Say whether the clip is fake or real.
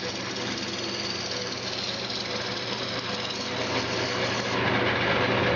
fake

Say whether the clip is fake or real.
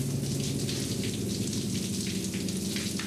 real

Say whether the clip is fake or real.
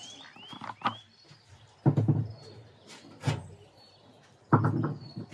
real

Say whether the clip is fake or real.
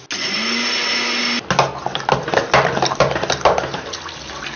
real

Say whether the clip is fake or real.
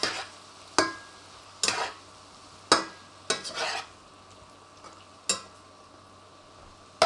real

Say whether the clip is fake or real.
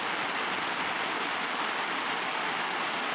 real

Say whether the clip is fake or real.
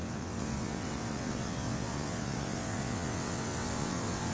fake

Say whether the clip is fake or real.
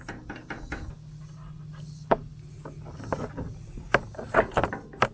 real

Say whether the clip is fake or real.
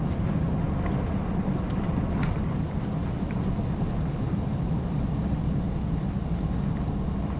real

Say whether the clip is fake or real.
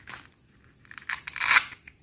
real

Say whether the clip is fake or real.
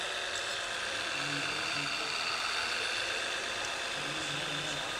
real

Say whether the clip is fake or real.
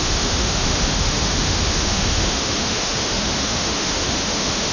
fake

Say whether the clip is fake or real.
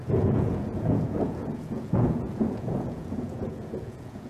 fake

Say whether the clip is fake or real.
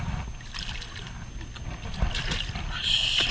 real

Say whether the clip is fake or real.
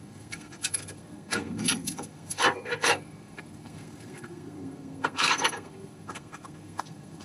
fake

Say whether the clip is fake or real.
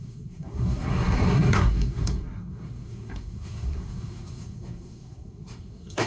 fake